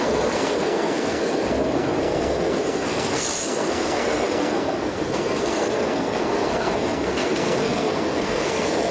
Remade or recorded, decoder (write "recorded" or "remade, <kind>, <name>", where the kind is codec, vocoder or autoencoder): remade, codec, SNAC